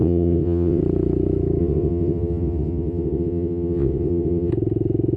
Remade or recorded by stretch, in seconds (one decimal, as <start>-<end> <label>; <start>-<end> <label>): 0.0-0.8 remade; 0.8-1.6 recorded; 1.6-4.5 remade; 4.5-5.2 recorded